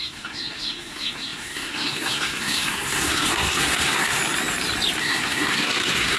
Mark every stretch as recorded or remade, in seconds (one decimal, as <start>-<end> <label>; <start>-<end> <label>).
0.0-4.2 remade; 4.2-5.0 recorded; 5.0-6.2 remade